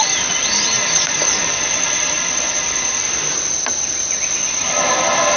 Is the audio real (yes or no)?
yes